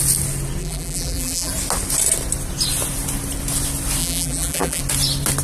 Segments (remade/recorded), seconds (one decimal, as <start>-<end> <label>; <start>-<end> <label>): 0.0-0.6 recorded; 0.6-1.5 remade; 1.5-4.0 recorded; 4.0-4.8 remade; 4.8-5.4 recorded

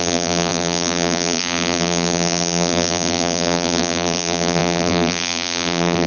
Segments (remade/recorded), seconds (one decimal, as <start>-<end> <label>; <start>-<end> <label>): 0.0-6.1 remade